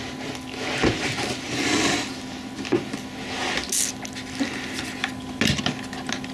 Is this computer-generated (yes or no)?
no